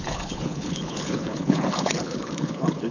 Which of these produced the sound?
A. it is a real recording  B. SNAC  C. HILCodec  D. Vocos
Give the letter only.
C